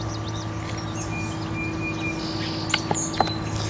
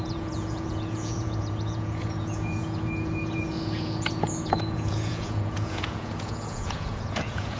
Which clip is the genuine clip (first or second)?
first